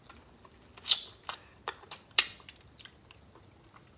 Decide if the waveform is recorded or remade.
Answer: recorded